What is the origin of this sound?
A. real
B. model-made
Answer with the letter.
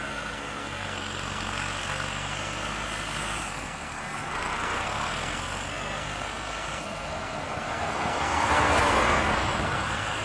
B